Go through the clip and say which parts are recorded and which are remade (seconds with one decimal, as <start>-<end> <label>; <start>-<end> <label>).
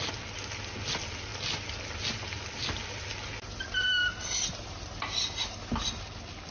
0.0-6.5 recorded